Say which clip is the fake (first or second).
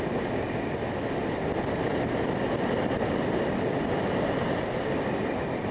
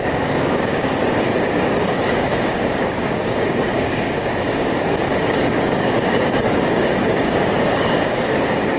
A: second